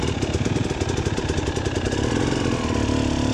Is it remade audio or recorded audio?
recorded